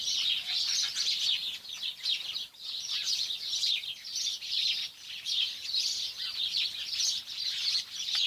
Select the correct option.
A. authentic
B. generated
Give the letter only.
B